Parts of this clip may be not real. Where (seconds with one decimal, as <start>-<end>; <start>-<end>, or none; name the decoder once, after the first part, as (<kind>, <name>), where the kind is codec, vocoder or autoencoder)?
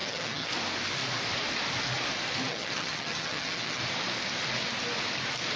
0.0-0.5 (vocoder, HiFi-GAN); 2.5-3.8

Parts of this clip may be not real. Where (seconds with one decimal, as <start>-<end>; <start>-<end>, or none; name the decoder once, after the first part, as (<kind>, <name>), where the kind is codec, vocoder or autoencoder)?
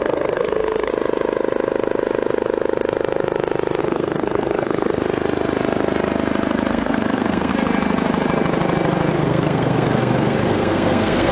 0.0-0.9 (codec, SNAC); 3.8-5.0; 6.7-7.5; 9.1-11.3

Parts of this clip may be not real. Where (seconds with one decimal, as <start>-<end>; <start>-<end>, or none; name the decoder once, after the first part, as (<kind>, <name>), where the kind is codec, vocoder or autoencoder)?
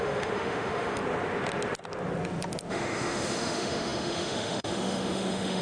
0.0-1.0 (autoencoder, DAC-VAE); 2.7-5.6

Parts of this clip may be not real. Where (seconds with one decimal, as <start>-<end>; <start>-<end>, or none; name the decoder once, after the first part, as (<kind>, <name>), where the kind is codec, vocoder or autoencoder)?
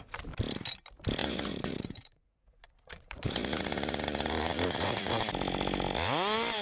1.2-5.2 (vocoder, Vocos)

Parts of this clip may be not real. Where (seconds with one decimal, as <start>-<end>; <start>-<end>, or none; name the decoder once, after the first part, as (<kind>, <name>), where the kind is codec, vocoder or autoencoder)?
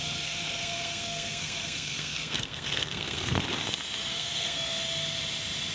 0.0-3.4 (codec, SNAC); 4.1-4.8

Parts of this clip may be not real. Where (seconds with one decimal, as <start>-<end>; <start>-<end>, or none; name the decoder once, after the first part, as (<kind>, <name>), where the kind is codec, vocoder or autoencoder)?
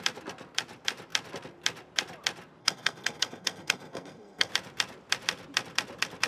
2.6-4.5 (codec, SNAC)